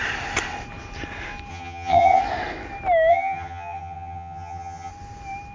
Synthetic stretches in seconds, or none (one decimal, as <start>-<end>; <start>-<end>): 1.5-2.2; 3.1-4.9